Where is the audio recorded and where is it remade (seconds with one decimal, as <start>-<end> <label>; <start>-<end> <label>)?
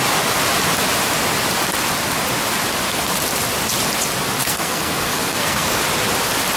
0.0-4.4 recorded; 4.4-5.8 remade; 5.8-6.6 recorded